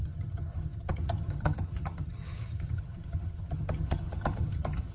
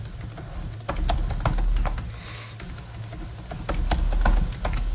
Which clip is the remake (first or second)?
first